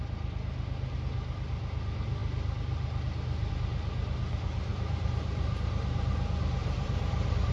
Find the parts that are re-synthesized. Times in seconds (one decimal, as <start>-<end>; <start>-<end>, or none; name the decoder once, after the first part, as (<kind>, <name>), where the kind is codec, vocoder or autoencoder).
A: 4.7-6.1 (vocoder, BigVGAN v2); 6.6-7.5